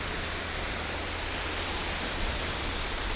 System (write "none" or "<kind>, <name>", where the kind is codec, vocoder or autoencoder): vocoder, BigVGAN v2